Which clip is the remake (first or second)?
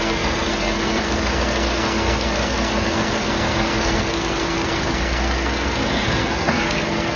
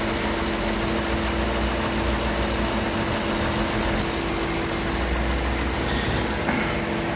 first